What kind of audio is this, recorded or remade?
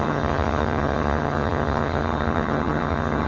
remade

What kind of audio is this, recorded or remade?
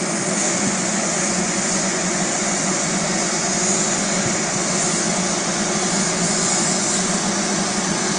remade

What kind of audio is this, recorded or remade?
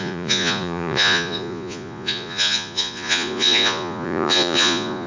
remade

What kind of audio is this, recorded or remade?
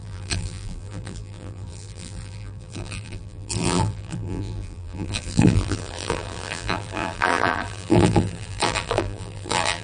remade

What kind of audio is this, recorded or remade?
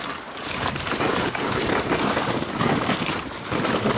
recorded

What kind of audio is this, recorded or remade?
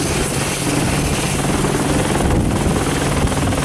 recorded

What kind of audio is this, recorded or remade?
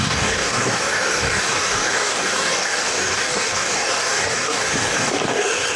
remade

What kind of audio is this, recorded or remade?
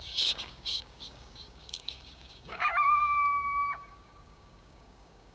remade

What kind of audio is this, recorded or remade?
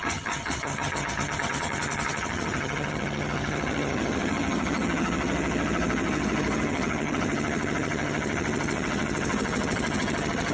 remade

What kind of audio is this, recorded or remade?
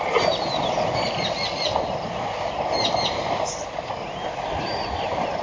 recorded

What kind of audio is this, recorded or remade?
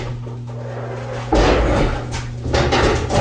recorded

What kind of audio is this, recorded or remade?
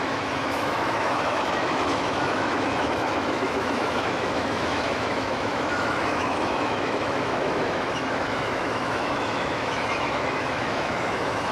remade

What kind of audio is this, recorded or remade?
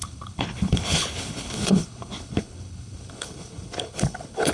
remade